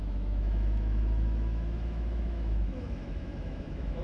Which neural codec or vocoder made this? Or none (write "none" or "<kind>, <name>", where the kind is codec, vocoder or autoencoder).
autoencoder, DAC-VAE